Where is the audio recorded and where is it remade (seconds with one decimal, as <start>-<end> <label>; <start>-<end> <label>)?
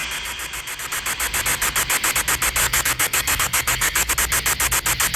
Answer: 0.0-2.6 recorded; 2.6-4.1 remade; 4.1-5.2 recorded